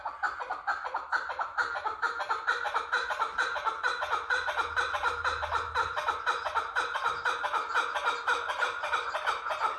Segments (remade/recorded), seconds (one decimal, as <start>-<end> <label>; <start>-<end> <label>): 0.0-1.5 recorded; 1.5-6.2 remade; 6.2-9.8 recorded